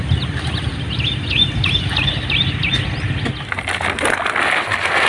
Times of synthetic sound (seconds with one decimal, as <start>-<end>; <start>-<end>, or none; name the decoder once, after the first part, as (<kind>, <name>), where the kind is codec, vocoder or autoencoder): none